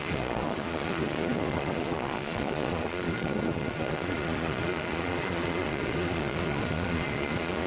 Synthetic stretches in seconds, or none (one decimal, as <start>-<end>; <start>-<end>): 0.0-7.7

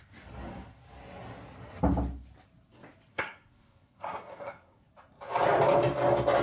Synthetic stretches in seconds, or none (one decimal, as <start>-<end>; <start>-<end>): 3.1-4.9

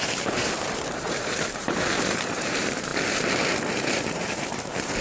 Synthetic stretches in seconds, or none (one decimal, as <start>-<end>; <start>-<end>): 0.0-2.9; 3.7-5.0

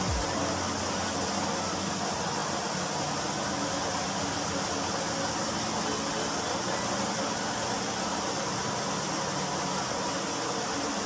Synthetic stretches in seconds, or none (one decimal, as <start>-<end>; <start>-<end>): none

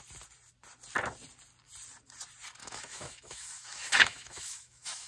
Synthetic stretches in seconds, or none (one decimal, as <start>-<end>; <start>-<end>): 2.6-5.1

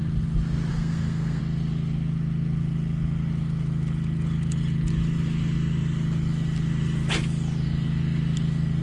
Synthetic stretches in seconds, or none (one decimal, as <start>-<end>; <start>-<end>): 0.7-1.4